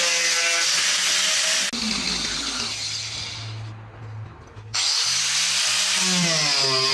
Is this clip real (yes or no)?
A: yes